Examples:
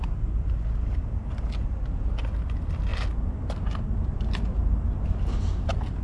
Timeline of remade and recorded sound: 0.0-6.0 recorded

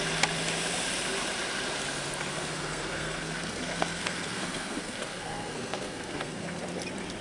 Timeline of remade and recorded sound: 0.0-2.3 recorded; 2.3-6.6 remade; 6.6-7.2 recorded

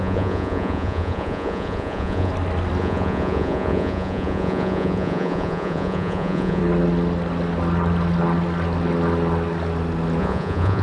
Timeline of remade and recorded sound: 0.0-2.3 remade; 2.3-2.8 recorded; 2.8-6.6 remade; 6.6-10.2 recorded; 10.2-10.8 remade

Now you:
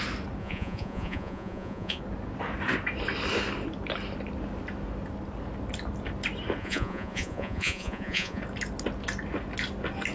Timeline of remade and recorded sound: 0.0-0.4 recorded; 0.4-2.0 remade; 2.0-6.6 recorded; 6.6-8.4 remade; 8.4-10.1 recorded

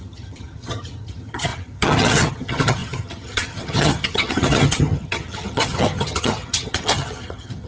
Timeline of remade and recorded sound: 0.0-7.7 remade

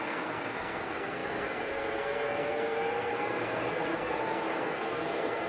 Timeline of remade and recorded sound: 0.0-5.5 remade

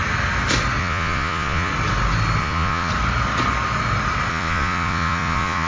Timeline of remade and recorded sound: 0.0-0.8 recorded; 0.8-1.7 remade; 1.7-2.4 recorded; 2.4-2.9 remade; 2.9-4.3 recorded; 4.3-5.7 remade

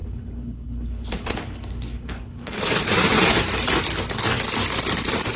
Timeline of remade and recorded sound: 0.0-2.6 remade; 2.6-5.4 recorded